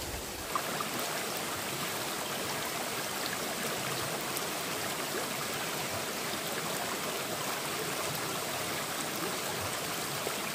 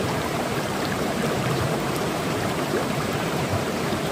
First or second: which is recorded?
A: first